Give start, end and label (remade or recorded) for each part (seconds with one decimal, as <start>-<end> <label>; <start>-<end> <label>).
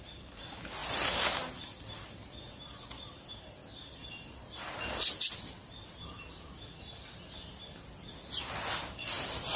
0.0-9.6 recorded